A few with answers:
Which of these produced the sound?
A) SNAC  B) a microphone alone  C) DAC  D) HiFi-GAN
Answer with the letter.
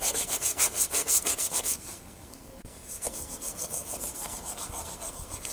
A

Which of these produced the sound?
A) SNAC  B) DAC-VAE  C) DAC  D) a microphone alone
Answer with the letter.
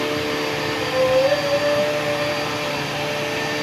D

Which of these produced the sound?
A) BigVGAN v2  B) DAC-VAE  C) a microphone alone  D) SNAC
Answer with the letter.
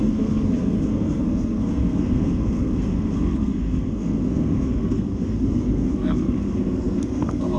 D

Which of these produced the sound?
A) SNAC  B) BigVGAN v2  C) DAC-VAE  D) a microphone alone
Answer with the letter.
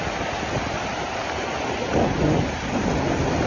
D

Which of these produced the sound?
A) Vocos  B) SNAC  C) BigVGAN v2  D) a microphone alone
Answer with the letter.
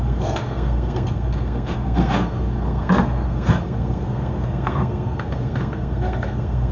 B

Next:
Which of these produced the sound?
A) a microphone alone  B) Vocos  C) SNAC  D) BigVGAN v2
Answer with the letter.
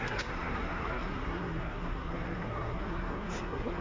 C